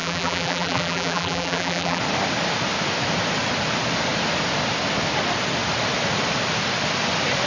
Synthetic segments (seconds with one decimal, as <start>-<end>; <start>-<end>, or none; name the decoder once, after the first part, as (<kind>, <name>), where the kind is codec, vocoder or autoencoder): 0.0-2.0 (vocoder, BigVGAN v2)